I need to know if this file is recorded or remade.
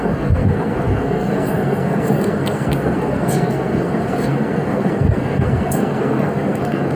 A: remade